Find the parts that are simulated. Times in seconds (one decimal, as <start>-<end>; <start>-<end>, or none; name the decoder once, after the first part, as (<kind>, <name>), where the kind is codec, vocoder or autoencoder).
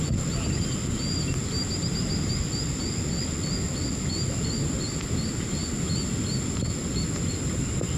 none